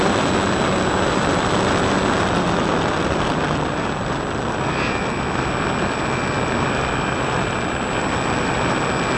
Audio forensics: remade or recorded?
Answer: recorded